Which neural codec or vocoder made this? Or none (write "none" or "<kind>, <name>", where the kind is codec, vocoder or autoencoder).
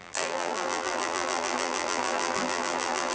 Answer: vocoder, BigVGAN v2